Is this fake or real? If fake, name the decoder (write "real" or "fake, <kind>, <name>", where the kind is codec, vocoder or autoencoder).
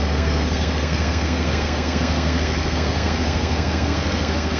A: fake, codec, SNAC